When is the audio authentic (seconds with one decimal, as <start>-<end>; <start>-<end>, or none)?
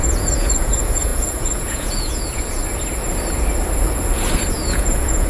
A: 2.6-4.5